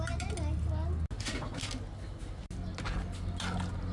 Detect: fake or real real